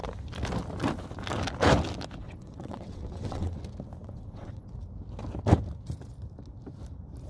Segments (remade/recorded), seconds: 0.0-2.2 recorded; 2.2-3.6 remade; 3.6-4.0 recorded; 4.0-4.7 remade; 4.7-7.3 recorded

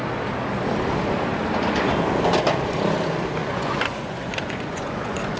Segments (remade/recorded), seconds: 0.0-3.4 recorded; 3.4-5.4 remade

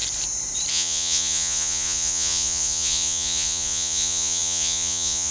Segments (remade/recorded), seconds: 0.0-0.7 recorded; 0.7-5.3 remade

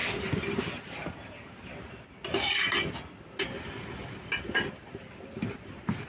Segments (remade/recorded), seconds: 0.0-6.1 recorded